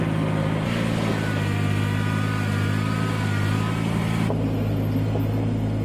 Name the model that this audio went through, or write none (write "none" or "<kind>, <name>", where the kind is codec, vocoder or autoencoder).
none